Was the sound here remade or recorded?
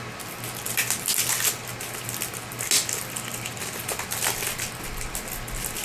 recorded